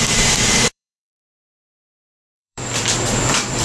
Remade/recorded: remade